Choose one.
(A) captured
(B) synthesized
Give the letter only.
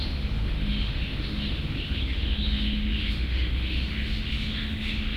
B